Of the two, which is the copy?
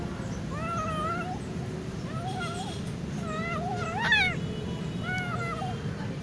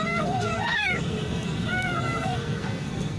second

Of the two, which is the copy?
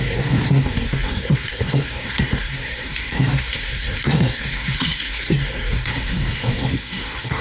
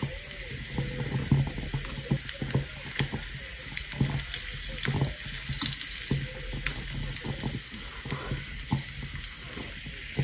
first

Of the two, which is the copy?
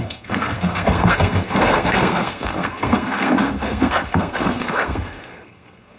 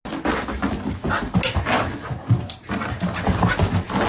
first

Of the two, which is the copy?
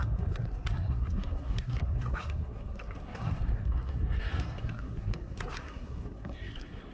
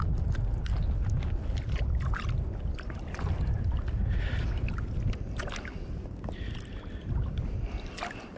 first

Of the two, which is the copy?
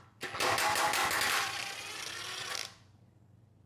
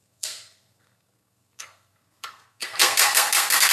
second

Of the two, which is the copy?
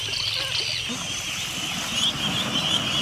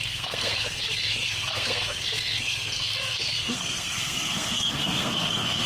second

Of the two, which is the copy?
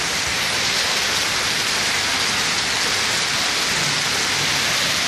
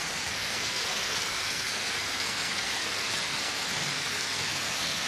second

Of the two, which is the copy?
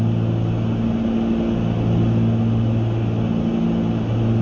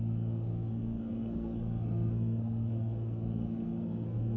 second